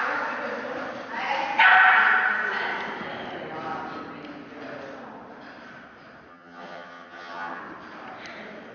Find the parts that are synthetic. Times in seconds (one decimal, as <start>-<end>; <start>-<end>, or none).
6.3-7.6

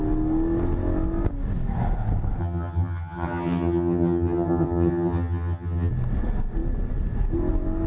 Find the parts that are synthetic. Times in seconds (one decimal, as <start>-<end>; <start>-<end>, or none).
2.4-5.9

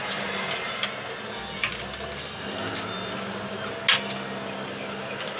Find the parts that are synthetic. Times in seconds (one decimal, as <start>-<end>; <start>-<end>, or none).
none

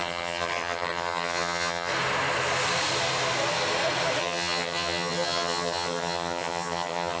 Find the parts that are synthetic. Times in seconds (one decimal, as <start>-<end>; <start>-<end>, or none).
0.0-1.9; 4.2-7.2

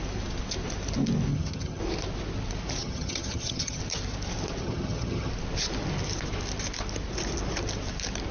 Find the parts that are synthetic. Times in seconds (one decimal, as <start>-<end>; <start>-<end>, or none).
1.3-1.8; 2.8-3.8; 4.6-5.3

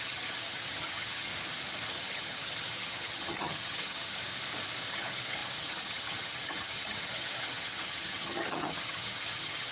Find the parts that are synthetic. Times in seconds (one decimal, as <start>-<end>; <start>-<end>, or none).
0.0-1.3; 1.9-4.2; 4.9-9.7